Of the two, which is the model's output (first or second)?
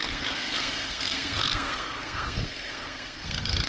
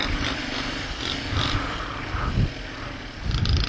first